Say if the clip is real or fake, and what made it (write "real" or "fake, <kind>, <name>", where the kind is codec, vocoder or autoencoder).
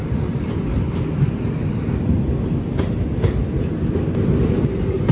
real